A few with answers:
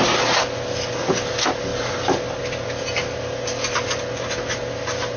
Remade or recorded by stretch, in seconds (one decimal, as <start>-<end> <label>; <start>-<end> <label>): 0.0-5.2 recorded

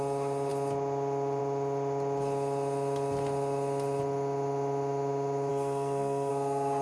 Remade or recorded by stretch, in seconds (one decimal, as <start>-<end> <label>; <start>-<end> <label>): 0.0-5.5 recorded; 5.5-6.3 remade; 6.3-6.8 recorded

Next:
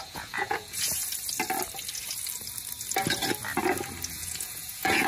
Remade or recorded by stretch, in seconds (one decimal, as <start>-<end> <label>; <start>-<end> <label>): 0.0-1.0 remade; 1.0-4.1 recorded; 4.1-5.1 remade